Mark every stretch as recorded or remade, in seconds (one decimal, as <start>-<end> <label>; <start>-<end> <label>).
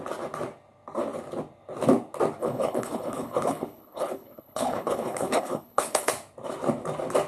0.0-2.4 recorded; 2.4-6.1 remade; 6.1-7.3 recorded